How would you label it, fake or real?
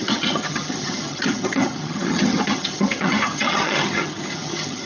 fake